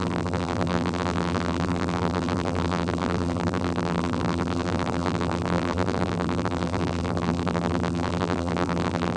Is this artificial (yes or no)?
yes